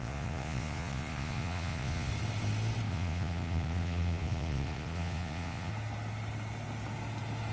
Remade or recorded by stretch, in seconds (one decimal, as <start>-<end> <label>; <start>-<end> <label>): 0.0-2.1 remade; 2.1-2.9 recorded; 2.9-5.7 remade; 5.7-7.5 recorded